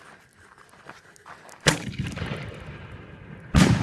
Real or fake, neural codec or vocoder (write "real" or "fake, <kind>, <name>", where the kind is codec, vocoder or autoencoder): real